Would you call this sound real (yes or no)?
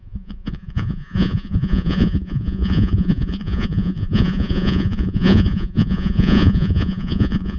no